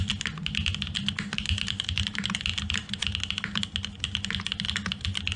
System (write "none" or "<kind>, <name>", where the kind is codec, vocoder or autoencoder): none